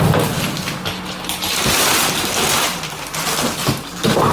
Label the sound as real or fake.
real